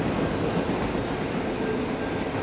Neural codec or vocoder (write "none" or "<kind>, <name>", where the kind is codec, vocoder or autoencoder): none